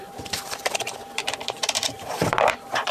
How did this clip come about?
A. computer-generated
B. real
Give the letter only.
A